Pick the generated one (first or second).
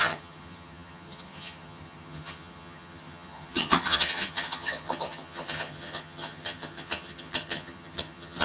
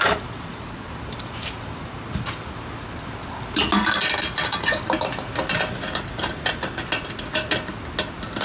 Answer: first